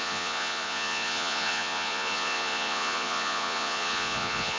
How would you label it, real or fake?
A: fake